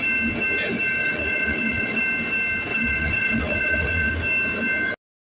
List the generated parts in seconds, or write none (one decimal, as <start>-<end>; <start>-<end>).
1.0-2.0; 2.7-4.1